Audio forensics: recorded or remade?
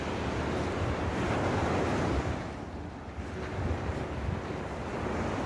recorded